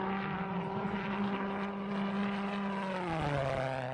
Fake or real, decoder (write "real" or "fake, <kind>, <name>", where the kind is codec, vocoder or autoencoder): real